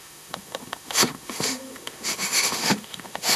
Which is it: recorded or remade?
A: remade